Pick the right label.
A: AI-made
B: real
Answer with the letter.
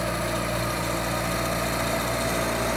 A